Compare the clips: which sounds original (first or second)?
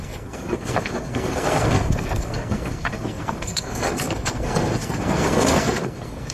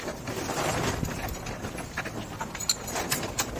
second